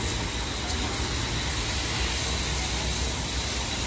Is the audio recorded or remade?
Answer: recorded